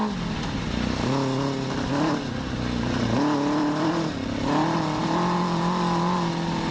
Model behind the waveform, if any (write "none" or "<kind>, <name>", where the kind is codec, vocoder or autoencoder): none